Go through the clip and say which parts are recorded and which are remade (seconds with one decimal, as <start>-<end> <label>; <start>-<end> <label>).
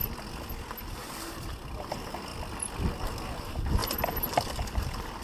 0.0-0.8 recorded; 0.8-2.3 remade; 2.3-3.4 recorded; 3.4-3.8 remade; 3.8-4.6 recorded; 4.6-5.2 remade